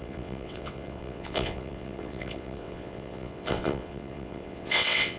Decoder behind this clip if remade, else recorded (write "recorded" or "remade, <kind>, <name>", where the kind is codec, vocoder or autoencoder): remade, vocoder, WaveNeXt